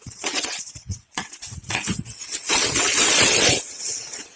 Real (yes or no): no